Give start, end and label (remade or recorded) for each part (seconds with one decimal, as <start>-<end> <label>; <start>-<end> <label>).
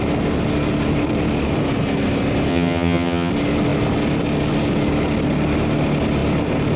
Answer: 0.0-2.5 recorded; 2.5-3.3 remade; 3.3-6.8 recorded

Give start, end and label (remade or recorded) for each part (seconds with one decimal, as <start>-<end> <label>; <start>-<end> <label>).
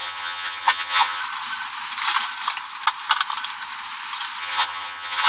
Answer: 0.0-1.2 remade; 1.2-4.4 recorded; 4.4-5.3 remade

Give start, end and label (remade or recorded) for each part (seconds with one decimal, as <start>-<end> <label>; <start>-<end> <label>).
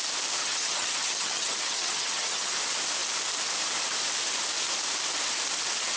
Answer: 0.0-0.4 recorded; 0.4-2.5 remade; 2.5-6.0 recorded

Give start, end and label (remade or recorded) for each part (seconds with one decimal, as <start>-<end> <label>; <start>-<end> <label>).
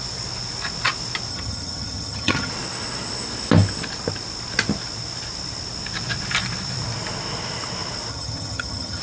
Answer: 0.0-1.3 recorded; 1.3-2.5 remade; 2.5-8.1 recorded; 8.1-9.0 remade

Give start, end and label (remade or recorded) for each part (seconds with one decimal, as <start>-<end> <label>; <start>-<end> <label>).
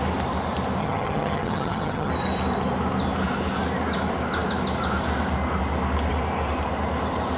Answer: 0.0-0.8 recorded; 0.8-2.1 remade; 2.1-7.4 recorded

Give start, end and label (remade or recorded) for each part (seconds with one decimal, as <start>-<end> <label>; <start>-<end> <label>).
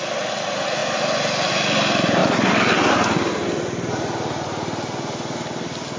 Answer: 0.0-6.0 recorded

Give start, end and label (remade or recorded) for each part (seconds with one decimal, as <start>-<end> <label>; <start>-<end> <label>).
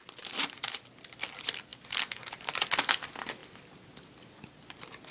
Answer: 0.0-5.1 recorded